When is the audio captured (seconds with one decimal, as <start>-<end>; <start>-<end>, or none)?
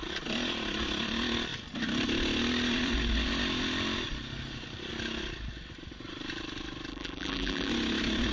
0.0-6.9; 7.7-8.3